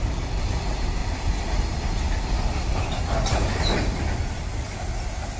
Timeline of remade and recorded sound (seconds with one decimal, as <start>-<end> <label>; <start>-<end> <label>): 0.0-5.4 recorded